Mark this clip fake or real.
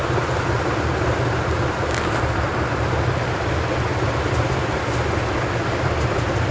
real